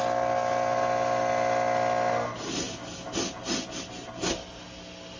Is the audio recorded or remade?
recorded